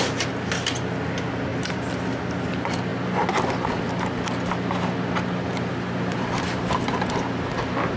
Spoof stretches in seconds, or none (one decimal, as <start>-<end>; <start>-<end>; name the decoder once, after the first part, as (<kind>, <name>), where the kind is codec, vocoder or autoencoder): none